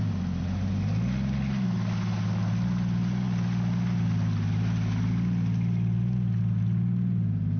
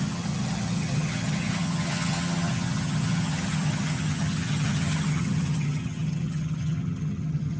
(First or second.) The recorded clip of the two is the first